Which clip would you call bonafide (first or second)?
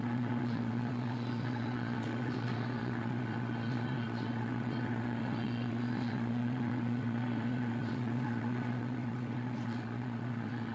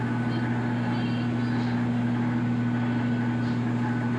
second